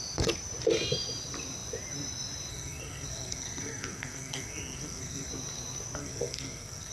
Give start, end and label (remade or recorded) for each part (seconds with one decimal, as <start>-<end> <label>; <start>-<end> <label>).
0.0-2.5 recorded; 2.5-5.3 remade; 5.3-6.0 recorded; 6.0-6.9 remade